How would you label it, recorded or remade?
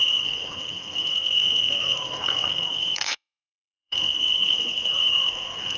remade